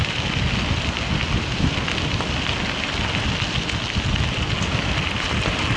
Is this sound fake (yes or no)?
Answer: no